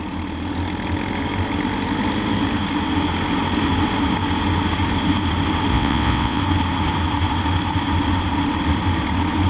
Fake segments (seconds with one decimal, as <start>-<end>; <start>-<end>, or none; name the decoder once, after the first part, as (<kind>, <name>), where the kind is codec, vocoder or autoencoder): 5.7-6.4 (vocoder, WaveNeXt)